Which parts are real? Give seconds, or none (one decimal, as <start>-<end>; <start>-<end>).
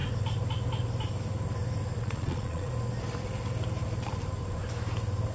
0.0-2.0; 2.7-5.3